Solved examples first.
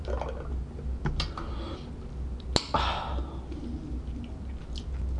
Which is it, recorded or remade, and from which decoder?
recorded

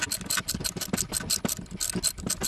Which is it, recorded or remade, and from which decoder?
recorded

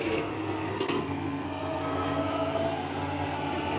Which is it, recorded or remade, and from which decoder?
remade, codec, SNAC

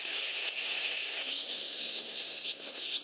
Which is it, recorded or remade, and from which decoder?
remade, codec, SNAC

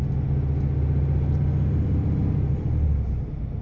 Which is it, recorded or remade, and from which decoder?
recorded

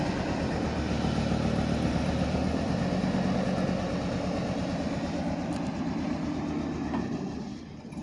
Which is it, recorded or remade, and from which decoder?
recorded